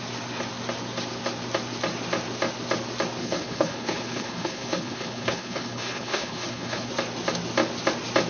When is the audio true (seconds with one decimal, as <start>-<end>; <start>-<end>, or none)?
0.0-3.2; 6.9-8.3